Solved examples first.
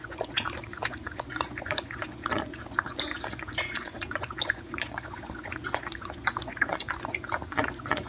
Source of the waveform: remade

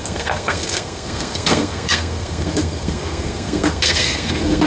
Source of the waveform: remade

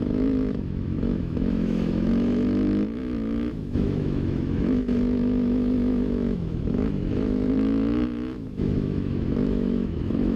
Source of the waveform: remade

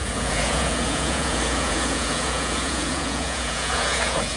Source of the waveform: remade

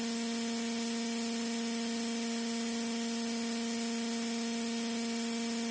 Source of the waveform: recorded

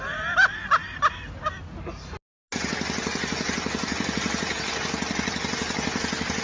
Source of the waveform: recorded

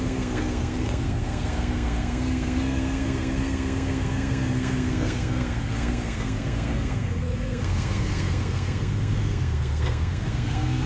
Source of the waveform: remade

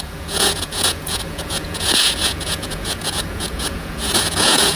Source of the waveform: remade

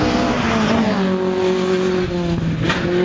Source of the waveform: recorded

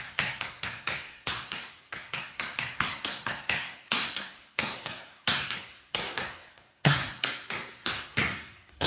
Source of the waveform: remade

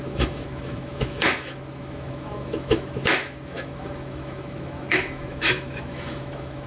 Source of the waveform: remade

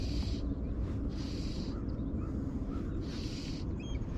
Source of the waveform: recorded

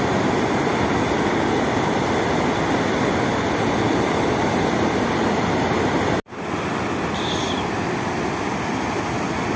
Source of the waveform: recorded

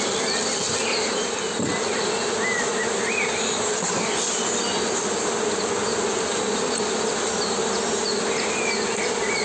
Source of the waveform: recorded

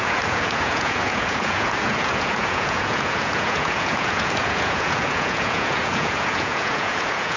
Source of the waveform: remade